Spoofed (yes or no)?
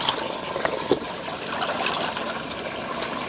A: no